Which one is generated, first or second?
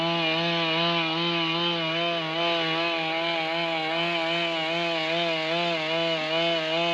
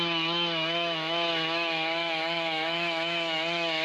second